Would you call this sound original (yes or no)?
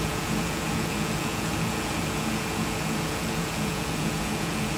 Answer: no